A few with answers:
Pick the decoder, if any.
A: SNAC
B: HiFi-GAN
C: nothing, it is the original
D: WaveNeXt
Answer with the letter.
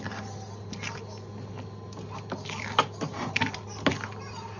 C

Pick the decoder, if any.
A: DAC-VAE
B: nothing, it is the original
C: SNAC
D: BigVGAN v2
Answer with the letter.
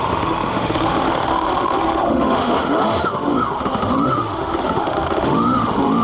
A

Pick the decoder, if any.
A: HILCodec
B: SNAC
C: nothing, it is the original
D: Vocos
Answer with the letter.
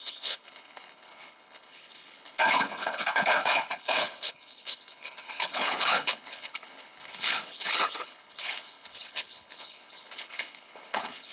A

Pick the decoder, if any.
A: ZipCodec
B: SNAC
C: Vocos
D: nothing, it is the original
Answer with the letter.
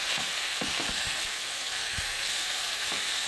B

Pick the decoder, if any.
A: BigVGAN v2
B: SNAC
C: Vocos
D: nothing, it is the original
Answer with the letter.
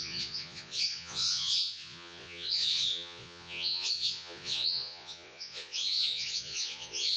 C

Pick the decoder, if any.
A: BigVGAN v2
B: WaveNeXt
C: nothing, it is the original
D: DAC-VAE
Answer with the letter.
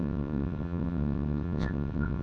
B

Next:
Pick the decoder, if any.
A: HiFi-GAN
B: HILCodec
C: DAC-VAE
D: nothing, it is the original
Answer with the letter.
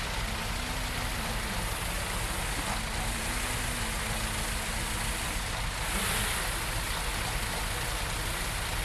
D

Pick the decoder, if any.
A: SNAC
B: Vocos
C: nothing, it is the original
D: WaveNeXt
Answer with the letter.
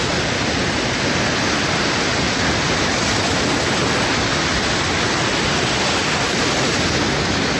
C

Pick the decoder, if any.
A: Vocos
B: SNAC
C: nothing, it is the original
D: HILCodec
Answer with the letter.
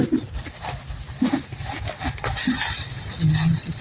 C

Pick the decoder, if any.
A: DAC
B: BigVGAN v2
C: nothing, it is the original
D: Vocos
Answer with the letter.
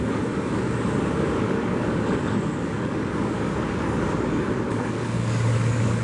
A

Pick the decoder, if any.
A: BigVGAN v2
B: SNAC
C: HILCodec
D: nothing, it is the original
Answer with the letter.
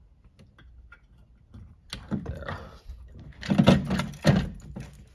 D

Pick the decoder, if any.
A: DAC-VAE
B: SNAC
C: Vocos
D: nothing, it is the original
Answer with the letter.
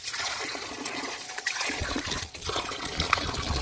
C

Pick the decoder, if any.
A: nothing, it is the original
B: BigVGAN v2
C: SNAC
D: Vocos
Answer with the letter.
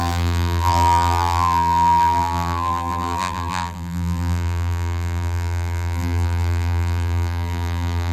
B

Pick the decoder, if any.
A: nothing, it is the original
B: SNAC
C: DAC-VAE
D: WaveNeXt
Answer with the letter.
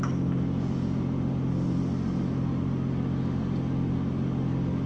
A